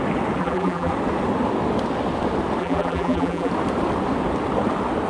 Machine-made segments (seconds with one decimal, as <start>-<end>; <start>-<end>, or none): 0.4-0.9; 2.6-3.5